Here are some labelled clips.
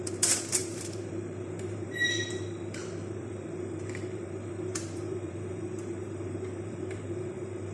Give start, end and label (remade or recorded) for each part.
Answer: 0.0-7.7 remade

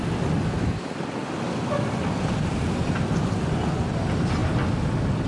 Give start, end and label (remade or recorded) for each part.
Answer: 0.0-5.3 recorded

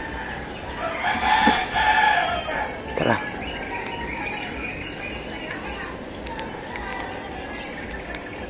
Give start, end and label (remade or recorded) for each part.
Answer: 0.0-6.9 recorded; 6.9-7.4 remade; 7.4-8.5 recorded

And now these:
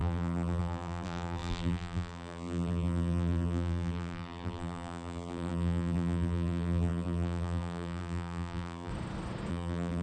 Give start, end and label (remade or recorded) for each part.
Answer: 0.0-8.9 remade; 8.9-9.5 recorded; 9.5-10.0 remade

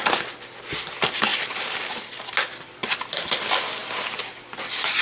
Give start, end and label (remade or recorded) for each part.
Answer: 0.0-2.5 recorded; 2.5-3.3 remade; 3.3-5.0 recorded